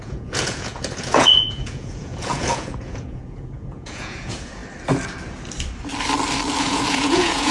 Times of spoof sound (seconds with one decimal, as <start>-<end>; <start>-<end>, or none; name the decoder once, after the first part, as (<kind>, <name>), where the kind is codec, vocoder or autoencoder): 0.0-4.6 (vocoder, Vocos); 6.6-7.5